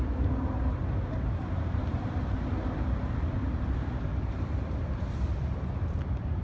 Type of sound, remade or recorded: recorded